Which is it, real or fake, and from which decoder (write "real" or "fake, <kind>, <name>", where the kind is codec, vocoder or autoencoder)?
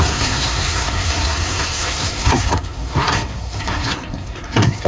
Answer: fake, codec, SNAC